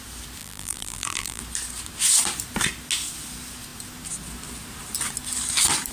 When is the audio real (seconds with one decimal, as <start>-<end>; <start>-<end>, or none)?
0.0-0.4; 1.4-5.9